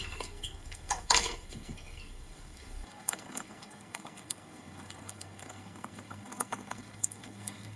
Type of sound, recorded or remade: remade